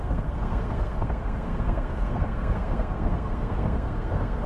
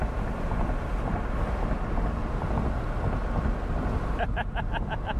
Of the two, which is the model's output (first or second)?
first